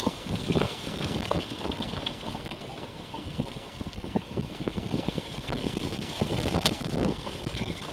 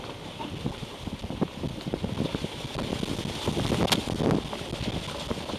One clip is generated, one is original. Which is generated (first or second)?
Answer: first